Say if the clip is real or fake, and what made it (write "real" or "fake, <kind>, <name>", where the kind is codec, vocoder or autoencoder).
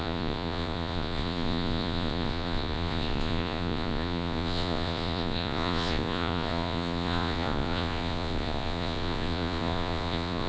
fake, vocoder, Vocos